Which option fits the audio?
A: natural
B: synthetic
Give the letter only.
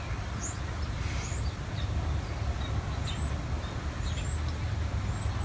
A